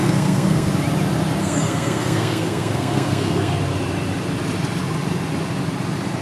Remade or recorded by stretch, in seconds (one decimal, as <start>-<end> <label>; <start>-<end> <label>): 0.0-0.7 remade; 0.7-1.4 recorded; 1.4-3.5 remade; 3.5-6.2 recorded